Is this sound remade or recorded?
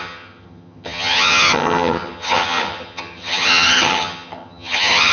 remade